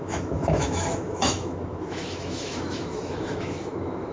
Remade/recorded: remade